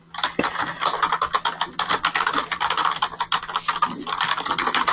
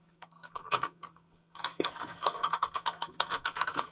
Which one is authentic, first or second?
first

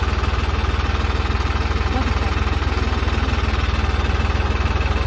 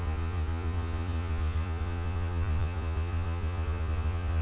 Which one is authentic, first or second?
first